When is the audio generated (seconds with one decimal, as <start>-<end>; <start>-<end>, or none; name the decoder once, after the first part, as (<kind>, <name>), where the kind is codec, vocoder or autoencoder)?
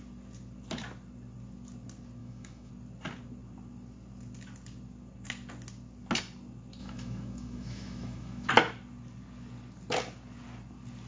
2.2-2.7 (autoencoder, DAC-VAE); 6.8-8.5